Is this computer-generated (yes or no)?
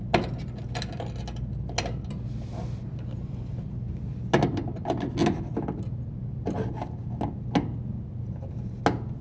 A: no